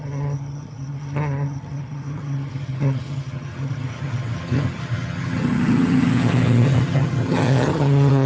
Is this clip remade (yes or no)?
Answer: yes